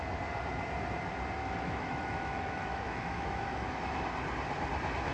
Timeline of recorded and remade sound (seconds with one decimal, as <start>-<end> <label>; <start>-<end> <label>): 0.0-1.4 recorded; 1.4-3.8 remade; 3.8-5.1 recorded